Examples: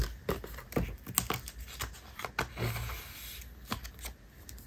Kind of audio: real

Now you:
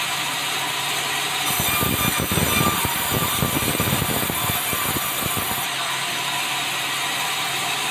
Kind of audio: real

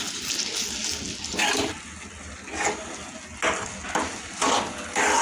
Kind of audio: real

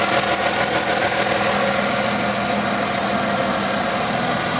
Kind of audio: real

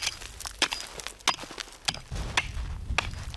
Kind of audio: real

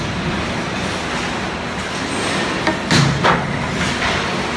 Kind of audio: real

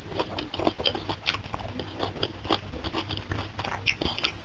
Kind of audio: real